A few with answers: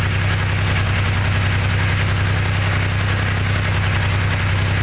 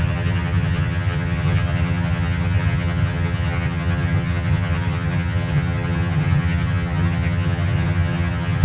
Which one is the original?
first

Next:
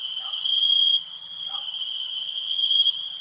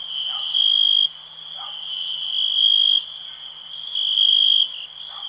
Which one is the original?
second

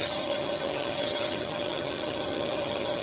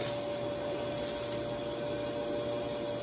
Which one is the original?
second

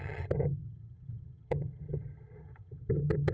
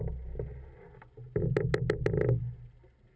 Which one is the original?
second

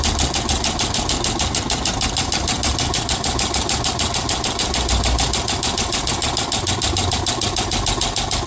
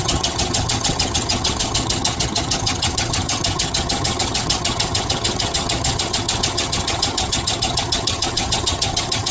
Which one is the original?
first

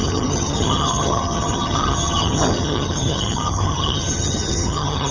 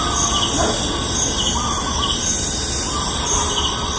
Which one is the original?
second